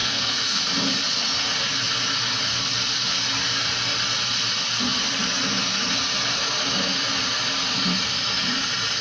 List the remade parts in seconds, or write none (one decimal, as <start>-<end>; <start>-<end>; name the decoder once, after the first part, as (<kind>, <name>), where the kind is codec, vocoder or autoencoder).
0.0-0.6 (codec, SNAC)